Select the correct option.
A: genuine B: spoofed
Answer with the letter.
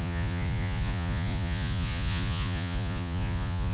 B